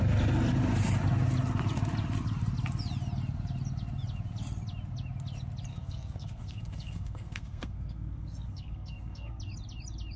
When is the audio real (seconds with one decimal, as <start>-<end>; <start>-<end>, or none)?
0.0-5.7; 9.4-10.2